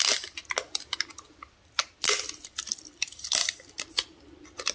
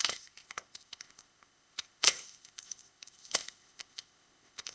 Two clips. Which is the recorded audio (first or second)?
first